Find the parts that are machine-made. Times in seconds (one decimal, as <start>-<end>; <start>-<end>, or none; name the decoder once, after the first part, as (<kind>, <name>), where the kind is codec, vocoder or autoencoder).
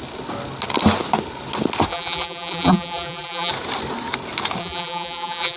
1.9-3.5 (vocoder, BigVGAN v2); 4.6-5.6